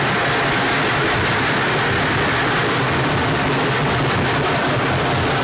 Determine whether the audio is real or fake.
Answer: real